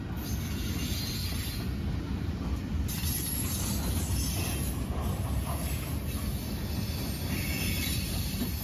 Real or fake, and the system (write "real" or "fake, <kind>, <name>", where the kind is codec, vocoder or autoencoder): real